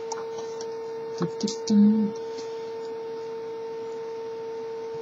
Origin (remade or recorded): recorded